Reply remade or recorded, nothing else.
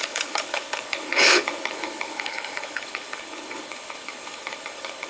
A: remade